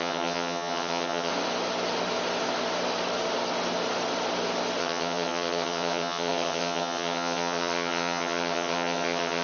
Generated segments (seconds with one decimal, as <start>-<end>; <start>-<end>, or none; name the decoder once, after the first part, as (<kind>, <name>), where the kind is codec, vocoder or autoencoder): 0.0-1.3 (vocoder, HiFi-GAN); 4.8-9.4